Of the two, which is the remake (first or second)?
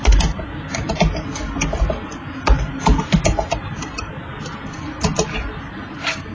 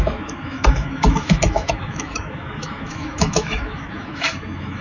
second